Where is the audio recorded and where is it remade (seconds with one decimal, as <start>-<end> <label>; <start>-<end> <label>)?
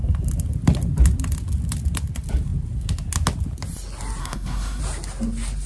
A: 0.0-4.2 recorded; 4.2-4.8 remade; 4.8-5.7 recorded